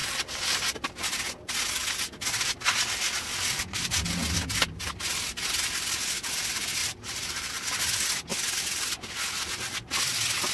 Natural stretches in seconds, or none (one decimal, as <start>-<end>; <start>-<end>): 0.0-6.8; 7.5-10.5